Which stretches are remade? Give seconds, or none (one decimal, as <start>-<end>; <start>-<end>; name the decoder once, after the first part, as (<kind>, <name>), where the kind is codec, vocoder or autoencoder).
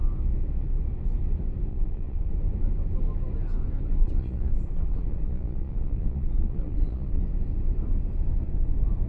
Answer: 1.7-2.3 (vocoder, Vocos); 4.0-7.2